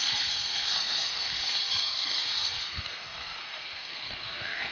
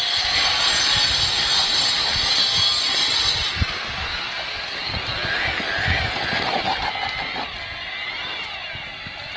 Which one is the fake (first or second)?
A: first